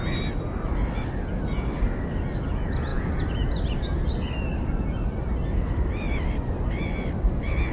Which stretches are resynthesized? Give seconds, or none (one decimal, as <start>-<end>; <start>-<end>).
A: none

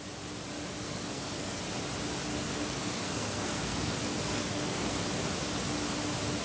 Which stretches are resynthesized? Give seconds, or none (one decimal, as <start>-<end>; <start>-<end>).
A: 0.8-1.6; 2.3-5.1

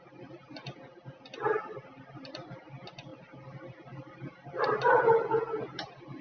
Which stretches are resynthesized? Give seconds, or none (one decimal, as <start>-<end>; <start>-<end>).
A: 1.5-2.6; 3.1-4.5

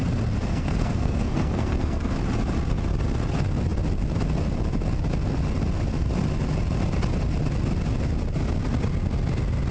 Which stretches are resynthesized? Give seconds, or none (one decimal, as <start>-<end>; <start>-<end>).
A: 0.4-2.1